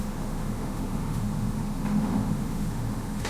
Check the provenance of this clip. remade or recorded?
remade